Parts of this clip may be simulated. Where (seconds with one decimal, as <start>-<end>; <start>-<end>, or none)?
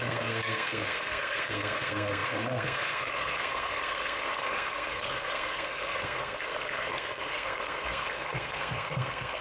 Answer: 0.0-9.4